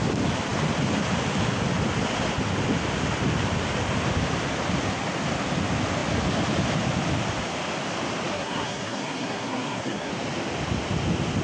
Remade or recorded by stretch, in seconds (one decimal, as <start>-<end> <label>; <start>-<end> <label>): 0.0-8.3 recorded; 8.3-10.1 remade; 10.1-11.4 recorded